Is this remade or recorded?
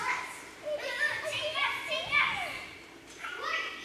recorded